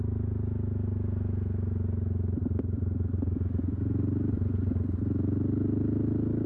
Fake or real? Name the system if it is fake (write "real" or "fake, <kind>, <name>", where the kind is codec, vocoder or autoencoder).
real